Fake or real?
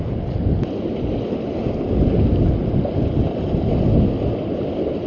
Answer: real